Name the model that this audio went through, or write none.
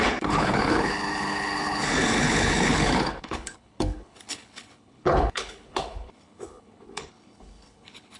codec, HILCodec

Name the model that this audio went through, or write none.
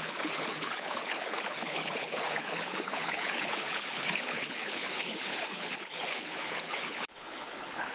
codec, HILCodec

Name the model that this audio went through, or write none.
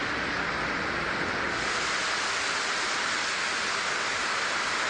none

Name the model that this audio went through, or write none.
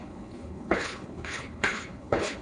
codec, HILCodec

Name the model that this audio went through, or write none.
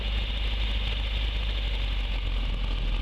none